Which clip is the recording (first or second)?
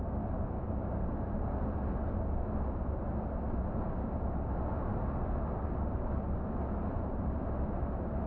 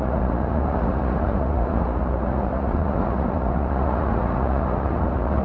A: first